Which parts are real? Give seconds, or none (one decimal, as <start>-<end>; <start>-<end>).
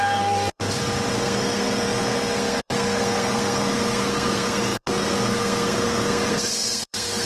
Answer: 0.6-1.1